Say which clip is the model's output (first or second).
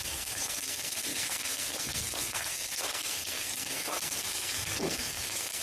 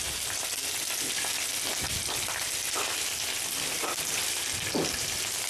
first